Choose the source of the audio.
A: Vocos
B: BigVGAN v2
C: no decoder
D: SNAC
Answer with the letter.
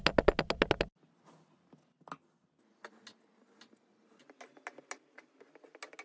C